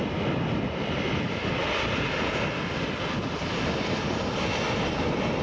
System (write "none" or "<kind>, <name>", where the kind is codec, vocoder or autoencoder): none